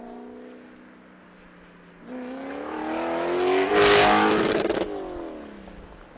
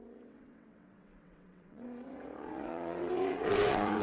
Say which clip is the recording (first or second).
first